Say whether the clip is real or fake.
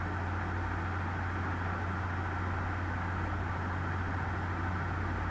real